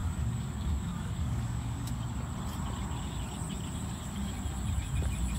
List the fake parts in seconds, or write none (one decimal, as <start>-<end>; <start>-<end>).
0.0-1.9